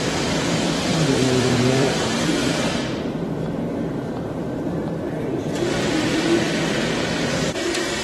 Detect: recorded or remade remade